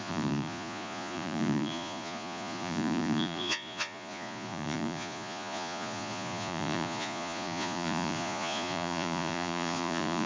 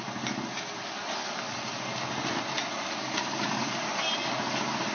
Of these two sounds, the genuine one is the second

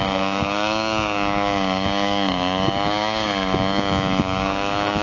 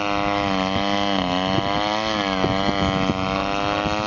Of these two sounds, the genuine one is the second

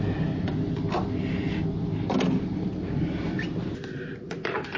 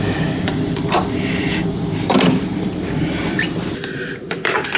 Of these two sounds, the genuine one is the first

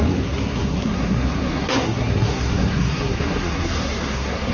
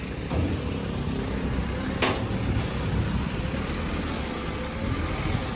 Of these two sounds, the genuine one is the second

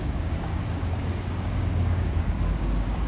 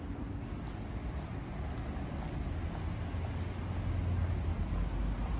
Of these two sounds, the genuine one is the second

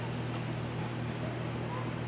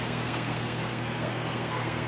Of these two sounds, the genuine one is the first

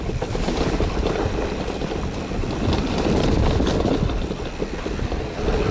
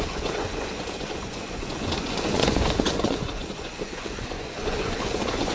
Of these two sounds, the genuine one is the first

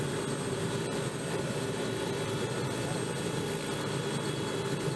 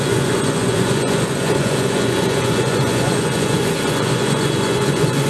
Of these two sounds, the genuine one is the first